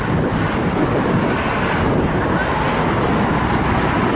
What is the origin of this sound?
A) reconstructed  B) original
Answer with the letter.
B